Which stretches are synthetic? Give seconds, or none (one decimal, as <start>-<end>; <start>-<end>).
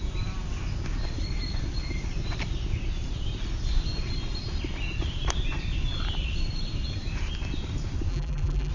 8.1-8.7